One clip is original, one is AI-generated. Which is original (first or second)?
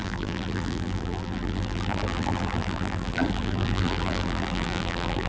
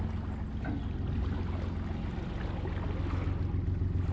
second